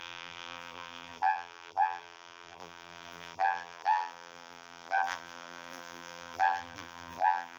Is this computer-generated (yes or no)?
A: yes